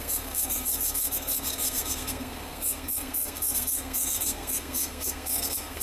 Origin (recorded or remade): remade